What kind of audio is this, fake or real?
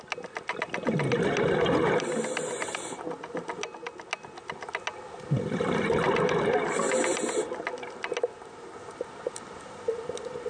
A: real